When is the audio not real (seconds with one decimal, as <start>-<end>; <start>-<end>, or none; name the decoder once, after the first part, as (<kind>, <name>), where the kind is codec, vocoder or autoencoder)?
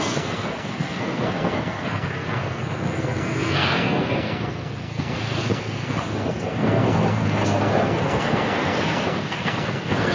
0.0-10.1 (codec, SNAC)